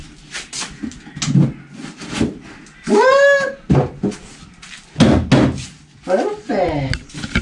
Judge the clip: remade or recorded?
recorded